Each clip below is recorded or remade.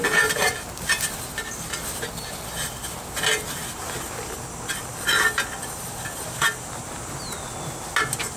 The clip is recorded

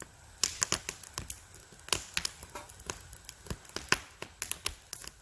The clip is recorded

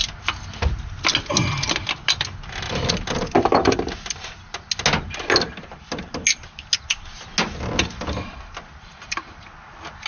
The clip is recorded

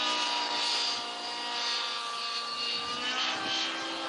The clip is recorded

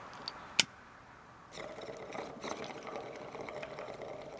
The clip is recorded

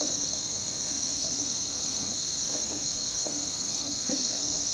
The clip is remade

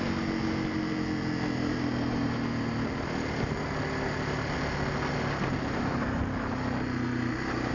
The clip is recorded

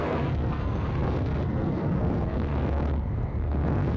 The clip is remade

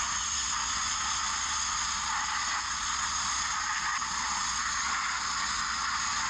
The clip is recorded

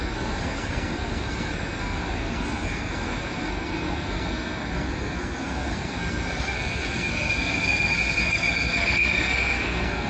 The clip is remade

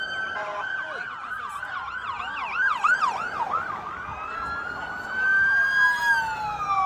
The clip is recorded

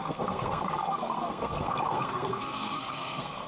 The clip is remade